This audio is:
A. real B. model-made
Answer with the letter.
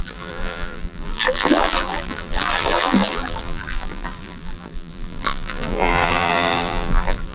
B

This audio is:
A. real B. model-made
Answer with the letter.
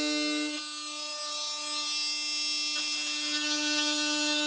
A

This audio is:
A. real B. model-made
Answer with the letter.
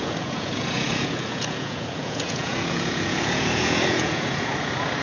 B